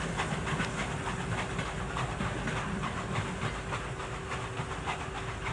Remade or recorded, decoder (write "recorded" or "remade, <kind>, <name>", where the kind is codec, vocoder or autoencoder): recorded